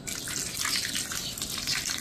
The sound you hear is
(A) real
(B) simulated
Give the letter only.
A